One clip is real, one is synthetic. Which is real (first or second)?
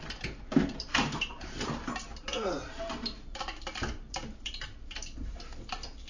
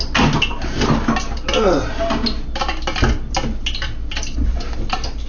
second